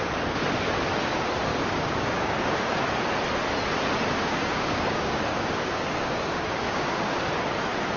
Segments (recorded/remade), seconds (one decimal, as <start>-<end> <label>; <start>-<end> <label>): 0.0-1.5 recorded; 1.5-2.8 remade; 2.8-4.2 recorded; 4.2-7.6 remade; 7.6-8.0 recorded